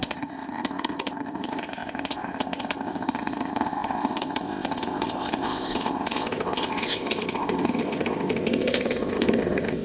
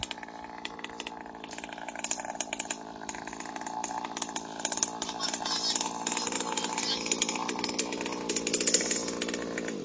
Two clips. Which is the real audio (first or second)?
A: second